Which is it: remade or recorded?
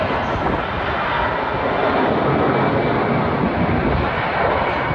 recorded